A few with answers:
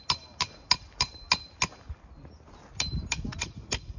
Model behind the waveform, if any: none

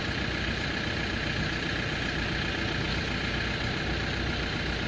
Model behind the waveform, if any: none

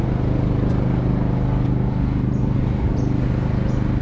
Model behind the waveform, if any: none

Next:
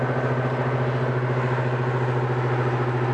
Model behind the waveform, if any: none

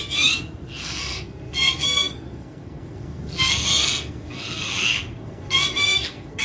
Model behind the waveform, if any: codec, SNAC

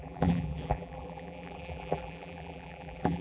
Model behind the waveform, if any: vocoder, BigVGAN v2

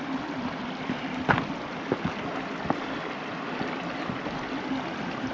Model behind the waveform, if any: none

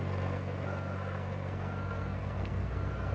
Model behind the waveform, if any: codec, SNAC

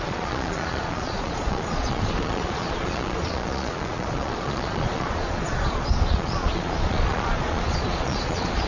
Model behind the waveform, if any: vocoder, Vocos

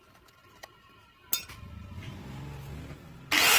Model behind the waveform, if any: none